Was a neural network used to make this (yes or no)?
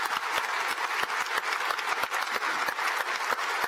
no